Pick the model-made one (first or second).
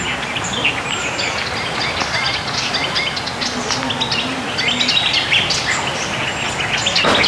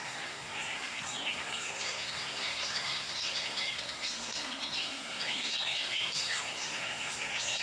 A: second